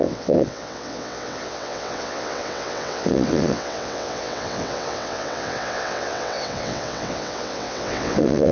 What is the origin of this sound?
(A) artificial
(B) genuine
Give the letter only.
A